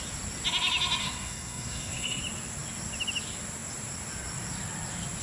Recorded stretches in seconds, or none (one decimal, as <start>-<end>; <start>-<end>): 0.0-1.0; 2.2-5.2